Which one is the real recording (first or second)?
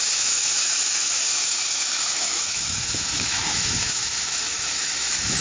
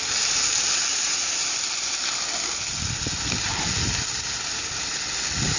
second